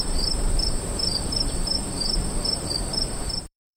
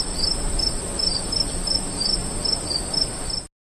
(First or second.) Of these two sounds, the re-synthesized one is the first